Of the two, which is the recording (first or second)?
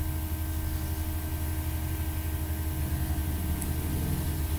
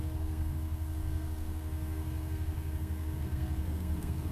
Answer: first